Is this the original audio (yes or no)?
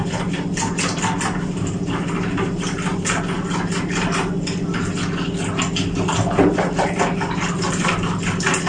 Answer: yes